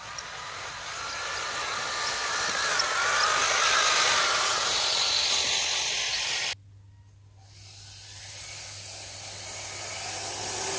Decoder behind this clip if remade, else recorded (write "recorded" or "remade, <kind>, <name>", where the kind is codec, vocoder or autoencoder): recorded